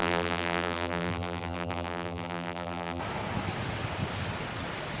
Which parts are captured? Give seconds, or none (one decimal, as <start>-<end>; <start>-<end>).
3.0-5.0